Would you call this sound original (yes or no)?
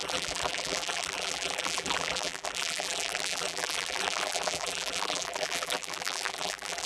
no